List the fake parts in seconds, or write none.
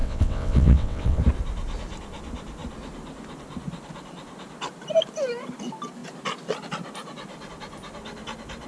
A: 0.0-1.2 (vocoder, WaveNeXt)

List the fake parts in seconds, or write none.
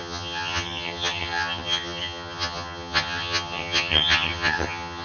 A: 0.0-5.0 (vocoder, HiFi-GAN)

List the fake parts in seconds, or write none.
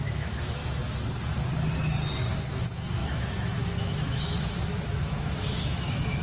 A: 0.0-0.6 (autoencoder, DAC-VAE); 2.3-6.2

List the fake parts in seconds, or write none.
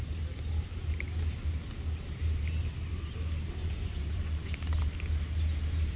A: 3.6-4.5 (vocoder, Vocos)